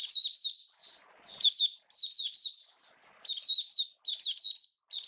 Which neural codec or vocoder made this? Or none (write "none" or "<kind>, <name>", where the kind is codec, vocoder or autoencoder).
none